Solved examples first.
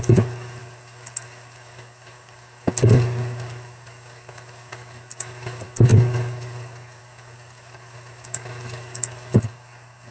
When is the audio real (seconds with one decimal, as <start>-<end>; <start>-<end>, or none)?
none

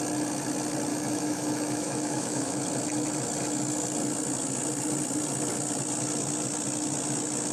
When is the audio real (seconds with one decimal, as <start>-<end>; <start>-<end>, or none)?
0.0-0.9; 2.6-7.5

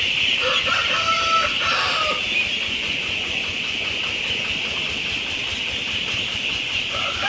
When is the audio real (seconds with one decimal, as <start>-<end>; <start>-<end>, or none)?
0.0-2.6; 4.0-6.3